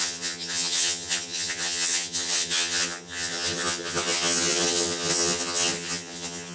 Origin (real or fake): fake